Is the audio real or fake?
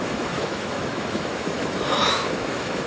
fake